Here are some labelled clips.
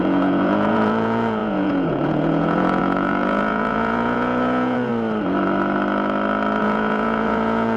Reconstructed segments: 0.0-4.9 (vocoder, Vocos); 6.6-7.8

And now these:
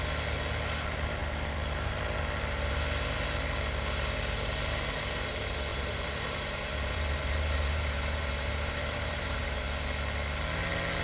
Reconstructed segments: 5.7-9.6 (vocoder, BigVGAN v2)

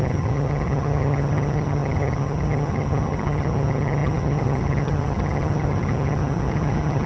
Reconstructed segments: 0.0-7.1 (vocoder, HiFi-GAN)

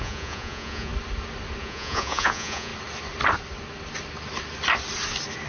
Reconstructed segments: 0.0-0.9 (vocoder, Vocos); 1.6-2.7

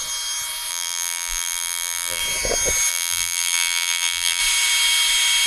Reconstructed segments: 0.7-2.2 (vocoder, BigVGAN v2); 2.9-4.4